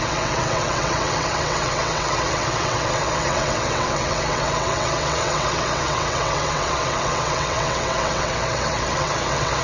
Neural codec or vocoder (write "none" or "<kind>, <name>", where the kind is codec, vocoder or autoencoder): vocoder, WaveNeXt